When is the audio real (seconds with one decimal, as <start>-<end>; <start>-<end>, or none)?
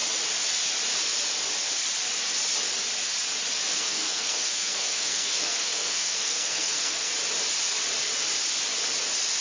0.0-3.7; 7.1-9.4